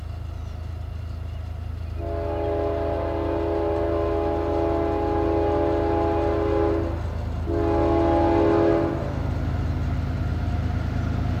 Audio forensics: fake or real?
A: real